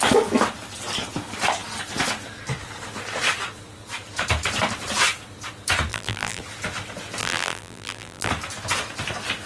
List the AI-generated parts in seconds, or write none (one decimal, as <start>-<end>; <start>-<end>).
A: 5.9-6.4; 7.2-8.3